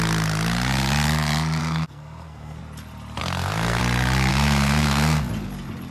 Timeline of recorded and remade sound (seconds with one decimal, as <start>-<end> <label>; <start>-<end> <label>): 0.0-1.6 recorded; 1.6-2.6 remade; 2.6-3.2 recorded; 3.2-3.8 remade; 3.8-4.3 recorded; 4.3-5.3 remade; 5.3-5.9 recorded